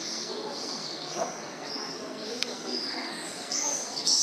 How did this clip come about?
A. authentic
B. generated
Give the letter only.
B